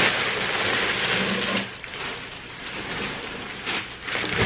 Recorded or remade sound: recorded